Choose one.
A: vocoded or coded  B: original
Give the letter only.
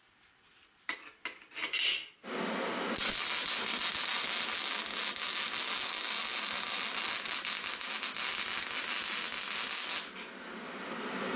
B